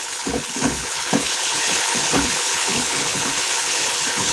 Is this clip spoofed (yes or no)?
yes